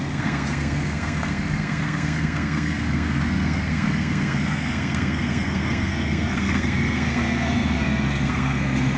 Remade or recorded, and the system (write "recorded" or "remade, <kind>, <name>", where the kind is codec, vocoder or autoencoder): remade, codec, SNAC